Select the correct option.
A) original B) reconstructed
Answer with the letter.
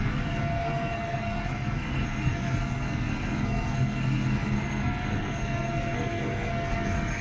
B